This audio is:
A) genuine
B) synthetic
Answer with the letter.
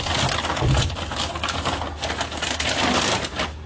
A